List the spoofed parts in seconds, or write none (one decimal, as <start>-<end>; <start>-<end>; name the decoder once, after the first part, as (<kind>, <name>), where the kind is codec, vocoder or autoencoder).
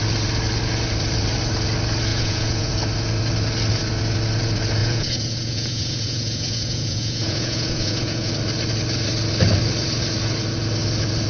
2.1-2.7 (vocoder, Vocos); 4.8-8.3